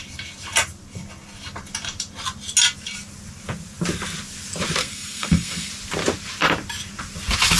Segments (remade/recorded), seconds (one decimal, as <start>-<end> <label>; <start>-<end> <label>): 0.0-4.8 recorded; 4.8-5.7 remade; 5.7-7.6 recorded